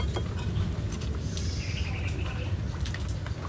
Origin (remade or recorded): recorded